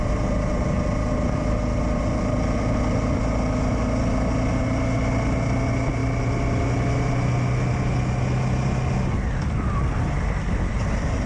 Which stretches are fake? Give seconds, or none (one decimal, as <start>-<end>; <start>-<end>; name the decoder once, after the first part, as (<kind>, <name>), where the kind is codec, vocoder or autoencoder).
none